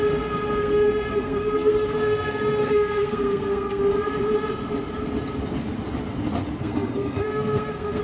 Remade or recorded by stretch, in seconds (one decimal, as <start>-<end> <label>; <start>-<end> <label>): 0.0-0.6 recorded; 0.6-3.8 remade; 3.8-6.6 recorded; 6.6-8.0 remade

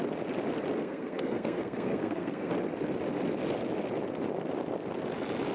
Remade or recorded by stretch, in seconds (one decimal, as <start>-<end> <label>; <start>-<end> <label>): 0.0-0.8 recorded; 0.8-2.5 remade; 2.5-5.5 recorded

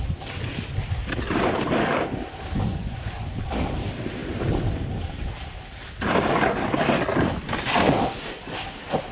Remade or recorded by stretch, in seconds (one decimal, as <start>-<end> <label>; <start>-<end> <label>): 0.0-2.7 recorded; 2.7-3.3 remade; 3.3-9.1 recorded

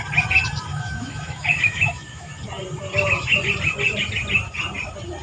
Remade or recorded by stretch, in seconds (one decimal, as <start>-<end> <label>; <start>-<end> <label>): 0.0-0.7 recorded; 0.7-2.3 remade; 2.3-5.2 recorded

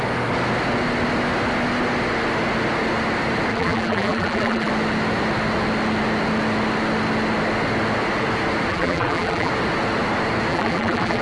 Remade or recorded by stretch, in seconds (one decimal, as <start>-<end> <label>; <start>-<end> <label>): 0.0-3.5 recorded; 3.5-4.7 remade; 4.7-8.7 recorded; 8.7-9.5 remade; 9.5-10.5 recorded; 10.5-11.2 remade

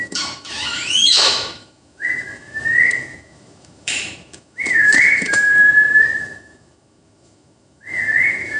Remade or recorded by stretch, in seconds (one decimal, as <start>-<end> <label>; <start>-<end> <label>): 0.0-5.5 remade; 5.5-6.2 recorded; 6.2-8.6 remade

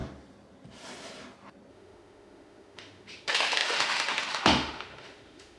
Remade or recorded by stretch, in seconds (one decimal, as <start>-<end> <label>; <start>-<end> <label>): 0.0-1.7 recorded; 1.7-5.6 remade

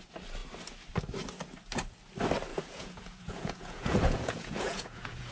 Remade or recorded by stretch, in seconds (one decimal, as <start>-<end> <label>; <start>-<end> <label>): 0.0-2.5 recorded; 2.5-5.3 remade